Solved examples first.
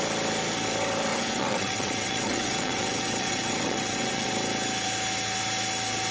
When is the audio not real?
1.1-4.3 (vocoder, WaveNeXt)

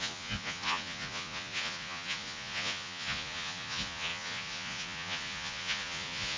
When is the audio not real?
0.0-6.4 (vocoder, Vocos)

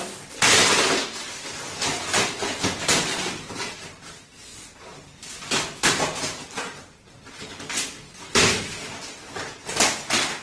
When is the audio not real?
none

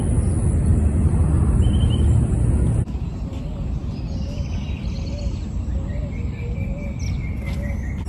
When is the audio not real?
none

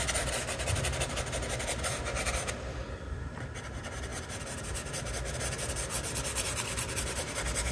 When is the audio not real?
none

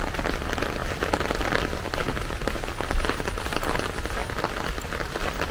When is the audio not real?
none

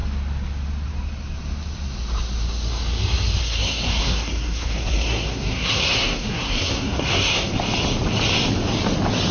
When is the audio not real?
3.4-7.5 (codec, SNAC)

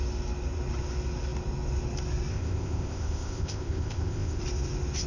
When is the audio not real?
2.3-4.4 (codec, ZipCodec)